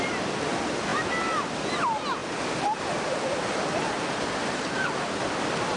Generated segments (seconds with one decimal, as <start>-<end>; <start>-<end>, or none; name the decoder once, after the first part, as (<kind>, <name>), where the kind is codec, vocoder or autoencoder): none